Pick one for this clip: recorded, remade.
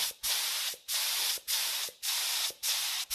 recorded